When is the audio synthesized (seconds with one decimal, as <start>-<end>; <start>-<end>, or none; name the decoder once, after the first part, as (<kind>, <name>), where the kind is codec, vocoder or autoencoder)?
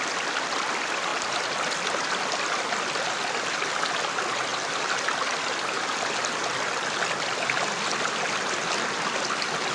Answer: none